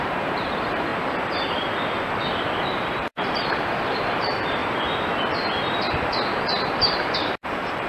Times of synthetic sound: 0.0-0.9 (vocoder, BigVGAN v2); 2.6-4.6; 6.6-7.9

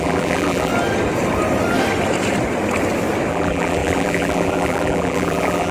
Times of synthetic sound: 0.0-0.7 (vocoder, BigVGAN v2); 3.3-5.7